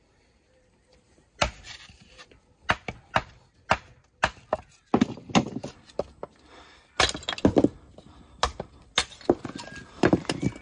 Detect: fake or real real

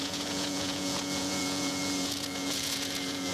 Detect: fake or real fake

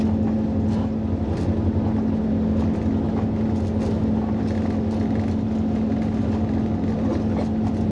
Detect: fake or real real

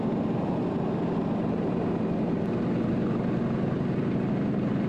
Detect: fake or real real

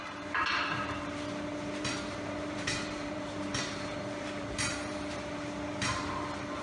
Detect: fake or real fake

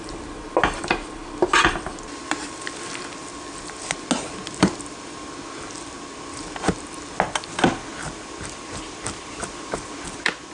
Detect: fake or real real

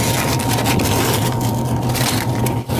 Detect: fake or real real